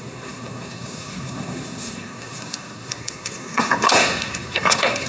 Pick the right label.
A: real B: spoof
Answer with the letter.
B